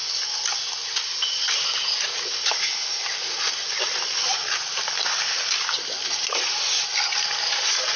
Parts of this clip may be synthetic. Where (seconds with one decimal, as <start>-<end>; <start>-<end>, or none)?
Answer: none